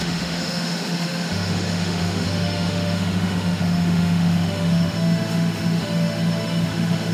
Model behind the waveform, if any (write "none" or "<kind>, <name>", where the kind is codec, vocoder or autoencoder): autoencoder, DAC-VAE